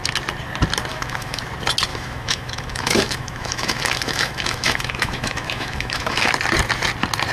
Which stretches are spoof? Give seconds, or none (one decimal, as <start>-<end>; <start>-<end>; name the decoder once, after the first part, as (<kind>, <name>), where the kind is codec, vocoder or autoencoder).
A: 0.9-1.4 (autoencoder, DAC-VAE); 1.9-6.3

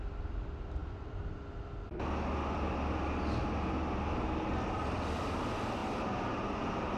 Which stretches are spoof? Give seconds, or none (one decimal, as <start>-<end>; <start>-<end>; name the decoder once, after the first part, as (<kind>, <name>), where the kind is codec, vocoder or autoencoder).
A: none

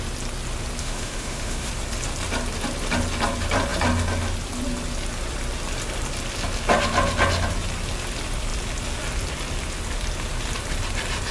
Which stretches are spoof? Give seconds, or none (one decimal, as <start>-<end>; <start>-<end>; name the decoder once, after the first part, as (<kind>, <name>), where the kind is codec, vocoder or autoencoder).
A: 0.8-1.7 (autoencoder, DAC-VAE)

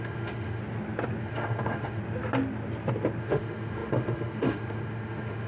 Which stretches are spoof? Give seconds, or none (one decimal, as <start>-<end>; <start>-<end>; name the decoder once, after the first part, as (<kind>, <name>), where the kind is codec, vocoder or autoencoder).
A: 0.0-0.6 (autoencoder, DAC-VAE); 1.2-2.0; 3.2-5.5

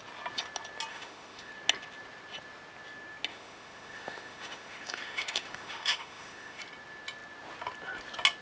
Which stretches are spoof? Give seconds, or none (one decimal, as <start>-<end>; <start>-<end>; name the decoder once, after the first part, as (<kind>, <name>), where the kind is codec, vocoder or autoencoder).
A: 0.9-1.5 (autoencoder, DAC-VAE); 3.3-6.6

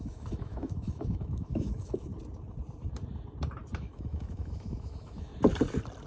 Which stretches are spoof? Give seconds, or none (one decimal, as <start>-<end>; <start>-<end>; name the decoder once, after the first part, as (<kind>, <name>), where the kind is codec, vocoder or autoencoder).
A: 0.0-2.1 (autoencoder, DAC-VAE); 3.8-5.3